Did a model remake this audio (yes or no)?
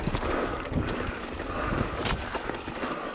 yes